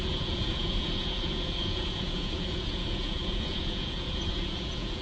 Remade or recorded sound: remade